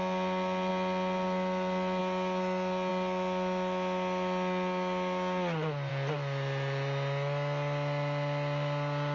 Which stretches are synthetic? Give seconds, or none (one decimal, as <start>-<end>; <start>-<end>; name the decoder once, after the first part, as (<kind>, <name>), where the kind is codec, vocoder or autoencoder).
none